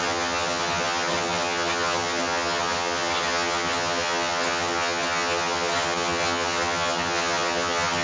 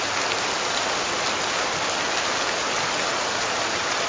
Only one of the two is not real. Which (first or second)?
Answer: first